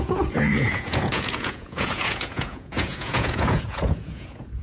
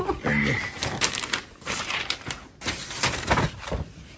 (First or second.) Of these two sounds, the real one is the second